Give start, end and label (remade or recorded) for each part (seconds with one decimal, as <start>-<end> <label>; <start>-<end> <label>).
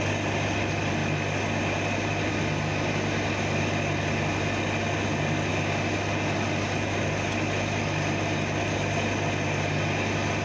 0.0-10.4 recorded